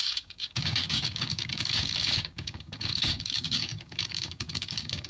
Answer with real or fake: fake